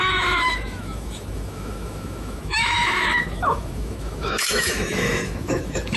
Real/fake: fake